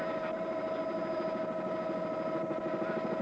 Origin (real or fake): real